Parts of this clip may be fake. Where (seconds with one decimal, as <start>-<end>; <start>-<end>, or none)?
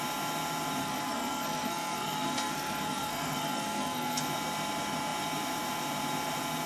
0.8-4.2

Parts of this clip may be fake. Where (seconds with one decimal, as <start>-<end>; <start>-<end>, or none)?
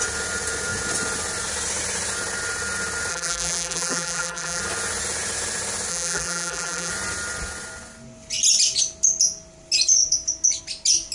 3.1-4.6; 5.9-6.9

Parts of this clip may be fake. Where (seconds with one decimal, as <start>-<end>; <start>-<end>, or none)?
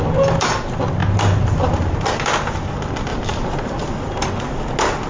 1.0-2.1; 3.1-3.9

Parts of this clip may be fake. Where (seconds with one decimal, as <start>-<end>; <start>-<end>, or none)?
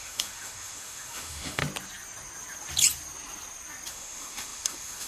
0.0-1.6; 3.9-5.1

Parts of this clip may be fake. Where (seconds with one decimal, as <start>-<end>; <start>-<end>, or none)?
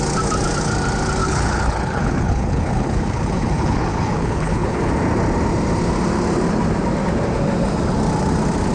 1.2-4.9